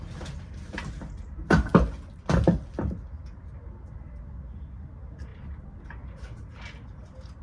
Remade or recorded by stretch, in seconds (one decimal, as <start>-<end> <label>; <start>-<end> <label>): 0.0-7.4 recorded